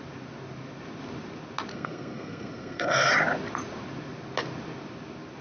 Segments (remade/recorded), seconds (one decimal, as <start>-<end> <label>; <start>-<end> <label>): 0.0-1.7 recorded; 1.7-3.1 remade; 3.1-5.4 recorded